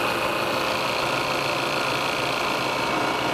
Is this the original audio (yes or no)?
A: yes